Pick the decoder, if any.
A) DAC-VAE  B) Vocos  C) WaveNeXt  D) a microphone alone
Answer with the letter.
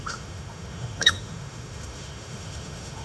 A